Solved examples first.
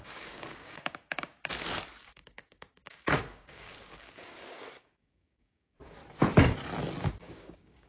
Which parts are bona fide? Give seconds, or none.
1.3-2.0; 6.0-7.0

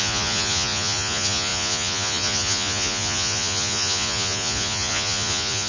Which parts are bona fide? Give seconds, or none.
none

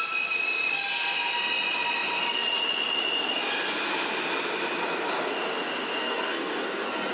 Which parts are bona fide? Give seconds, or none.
0.0-6.0

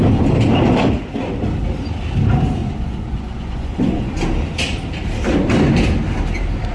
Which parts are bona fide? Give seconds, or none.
0.0-2.6; 4.1-6.7

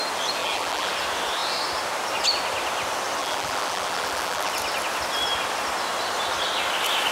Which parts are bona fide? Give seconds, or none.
0.0-0.4; 0.9-3.2; 4.5-7.1

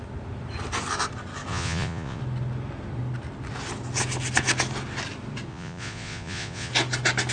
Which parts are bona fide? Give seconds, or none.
0.0-1.5; 2.2-5.5; 6.7-7.3

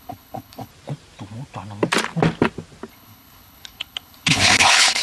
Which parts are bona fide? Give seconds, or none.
0.7-2.9